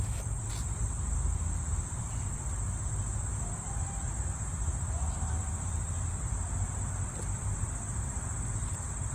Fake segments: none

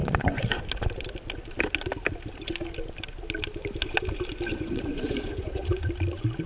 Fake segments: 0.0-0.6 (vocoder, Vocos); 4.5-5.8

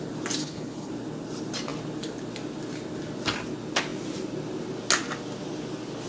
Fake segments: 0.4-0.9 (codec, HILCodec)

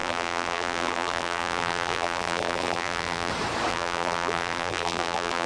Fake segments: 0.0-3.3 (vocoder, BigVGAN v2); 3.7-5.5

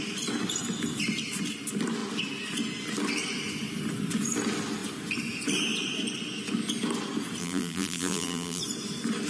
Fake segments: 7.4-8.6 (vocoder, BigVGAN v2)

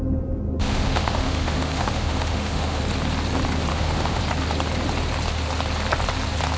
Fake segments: 0.6-2.8 (autoencoder, DAC-VAE); 3.7-4.2

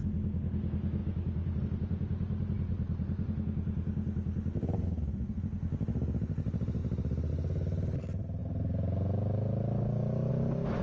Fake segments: 2.7-3.3 (vocoder, BigVGAN v2); 6.8-7.3

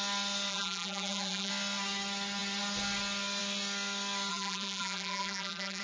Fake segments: 0.5-1.5 (vocoder, BigVGAN v2); 4.3-5.8